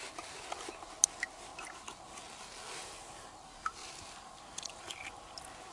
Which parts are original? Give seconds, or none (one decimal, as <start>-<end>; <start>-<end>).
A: 0.0-3.8; 5.1-5.7